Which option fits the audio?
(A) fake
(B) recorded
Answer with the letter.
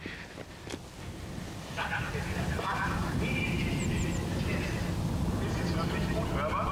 B